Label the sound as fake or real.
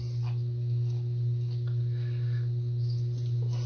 real